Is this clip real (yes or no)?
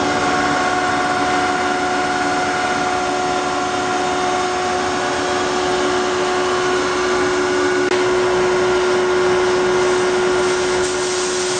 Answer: yes